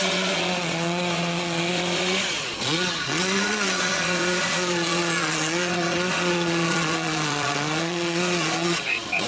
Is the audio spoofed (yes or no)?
yes